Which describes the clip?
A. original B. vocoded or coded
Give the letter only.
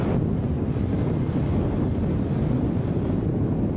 A